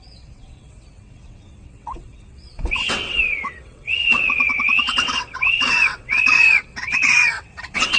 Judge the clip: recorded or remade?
remade